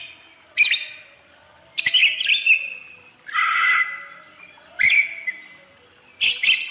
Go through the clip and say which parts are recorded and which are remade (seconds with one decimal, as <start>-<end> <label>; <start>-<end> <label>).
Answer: 0.0-6.7 recorded

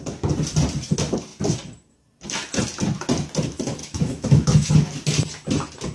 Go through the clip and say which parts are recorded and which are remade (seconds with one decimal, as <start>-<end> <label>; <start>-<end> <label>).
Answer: 0.0-3.8 recorded; 3.8-4.7 remade; 4.7-5.9 recorded

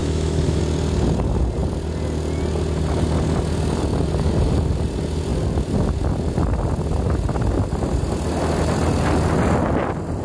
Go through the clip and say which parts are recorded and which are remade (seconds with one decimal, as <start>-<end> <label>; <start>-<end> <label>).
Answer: 0.0-0.6 remade; 0.6-10.2 recorded

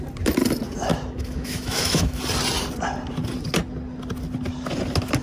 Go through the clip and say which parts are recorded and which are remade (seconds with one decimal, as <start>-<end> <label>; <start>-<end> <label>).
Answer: 0.0-0.9 recorded; 0.9-2.2 remade; 2.2-5.2 recorded

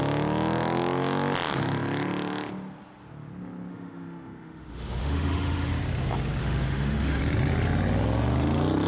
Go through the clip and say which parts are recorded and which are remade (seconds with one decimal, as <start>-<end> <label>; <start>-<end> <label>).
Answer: 0.0-3.7 recorded; 3.7-5.7 remade; 5.7-6.4 recorded; 6.4-7.2 remade; 7.2-8.9 recorded

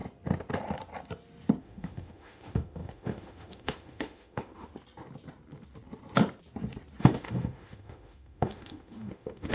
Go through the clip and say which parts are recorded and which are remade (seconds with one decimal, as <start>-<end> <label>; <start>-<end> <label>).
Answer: 0.0-1.6 recorded; 1.6-4.7 remade; 4.7-7.0 recorded; 7.0-9.5 remade